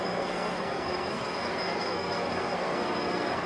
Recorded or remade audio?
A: remade